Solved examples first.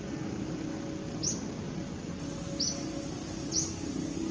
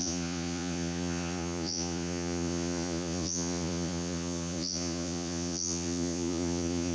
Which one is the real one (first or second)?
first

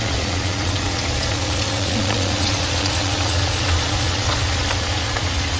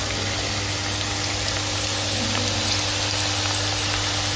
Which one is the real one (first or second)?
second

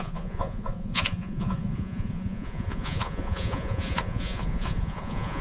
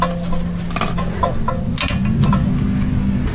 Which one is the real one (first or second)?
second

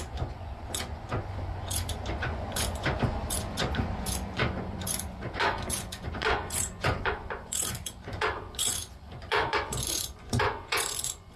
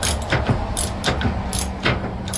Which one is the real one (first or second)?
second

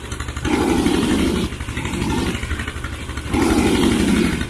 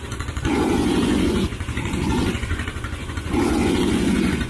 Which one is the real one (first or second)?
first